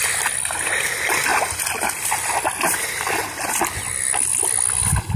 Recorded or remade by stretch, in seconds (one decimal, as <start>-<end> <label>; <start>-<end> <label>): 0.0-5.2 recorded